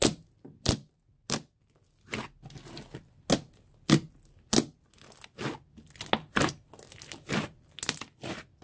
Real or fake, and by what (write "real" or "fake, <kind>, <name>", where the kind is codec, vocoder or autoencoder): real